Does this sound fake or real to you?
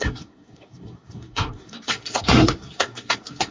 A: fake